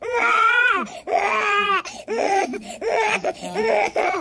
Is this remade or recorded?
remade